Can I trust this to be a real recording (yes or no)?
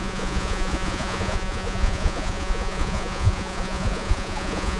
no